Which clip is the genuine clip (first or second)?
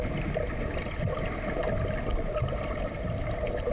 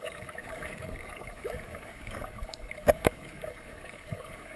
first